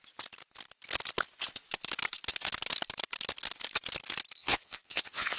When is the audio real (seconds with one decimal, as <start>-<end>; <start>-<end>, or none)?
0.0-4.4